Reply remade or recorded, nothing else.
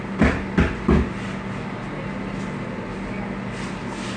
recorded